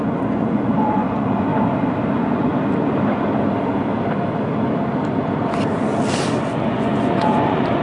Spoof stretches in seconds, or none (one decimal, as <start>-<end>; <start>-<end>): 0.0-1.5; 2.1-2.5; 6.5-7.8